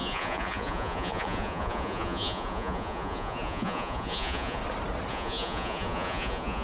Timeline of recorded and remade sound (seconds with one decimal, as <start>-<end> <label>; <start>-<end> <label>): 0.0-4.6 remade; 4.6-5.1 recorded; 5.1-6.6 remade